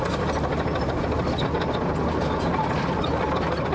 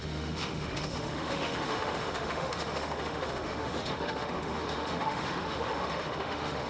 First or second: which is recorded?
first